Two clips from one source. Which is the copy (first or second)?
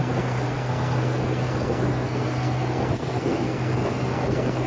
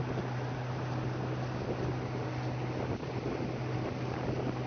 first